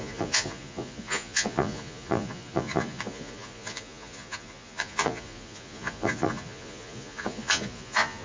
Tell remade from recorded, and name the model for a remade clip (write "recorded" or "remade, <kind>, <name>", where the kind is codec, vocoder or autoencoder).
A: remade, vocoder, Vocos